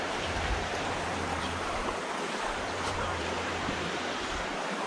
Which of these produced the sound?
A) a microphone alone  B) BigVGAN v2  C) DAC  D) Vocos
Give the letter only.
B